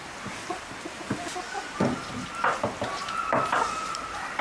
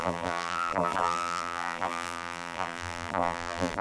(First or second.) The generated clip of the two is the second